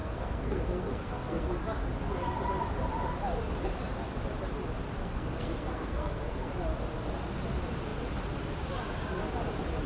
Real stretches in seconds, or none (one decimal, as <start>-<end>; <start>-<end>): 1.6-5.0; 6.5-9.9